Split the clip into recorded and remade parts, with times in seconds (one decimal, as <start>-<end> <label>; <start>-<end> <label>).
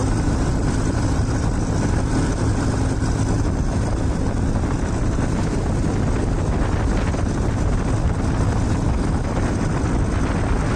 0.0-1.8 remade; 1.8-10.8 recorded